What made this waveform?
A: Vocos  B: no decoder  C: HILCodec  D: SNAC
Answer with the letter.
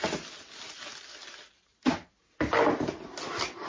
B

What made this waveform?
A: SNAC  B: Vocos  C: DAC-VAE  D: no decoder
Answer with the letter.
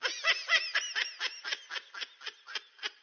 D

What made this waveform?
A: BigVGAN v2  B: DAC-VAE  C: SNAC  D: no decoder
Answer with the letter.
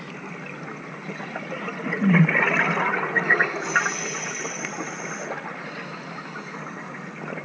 D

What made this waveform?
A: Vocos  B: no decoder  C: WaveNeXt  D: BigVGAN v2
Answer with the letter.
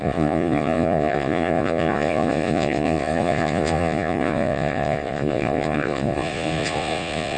A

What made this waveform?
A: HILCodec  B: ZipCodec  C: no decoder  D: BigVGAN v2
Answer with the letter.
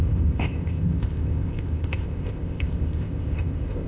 B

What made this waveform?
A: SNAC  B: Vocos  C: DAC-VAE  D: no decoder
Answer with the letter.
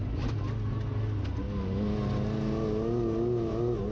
D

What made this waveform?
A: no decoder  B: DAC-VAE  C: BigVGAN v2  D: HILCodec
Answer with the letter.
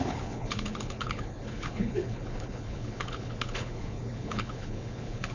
D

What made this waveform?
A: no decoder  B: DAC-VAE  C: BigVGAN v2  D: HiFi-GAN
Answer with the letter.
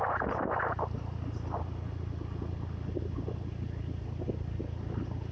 A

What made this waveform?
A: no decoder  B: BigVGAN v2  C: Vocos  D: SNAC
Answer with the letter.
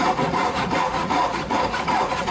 C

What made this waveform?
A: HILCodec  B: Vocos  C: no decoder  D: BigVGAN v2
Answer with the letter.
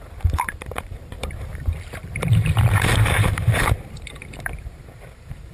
D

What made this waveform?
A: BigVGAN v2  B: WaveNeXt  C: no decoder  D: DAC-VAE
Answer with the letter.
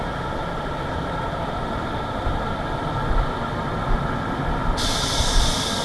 A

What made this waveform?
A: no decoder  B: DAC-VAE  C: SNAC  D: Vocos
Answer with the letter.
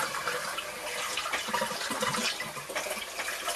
A